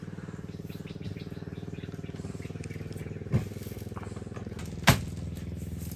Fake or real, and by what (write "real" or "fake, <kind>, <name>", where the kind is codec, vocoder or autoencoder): real